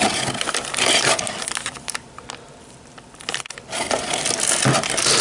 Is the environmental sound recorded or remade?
recorded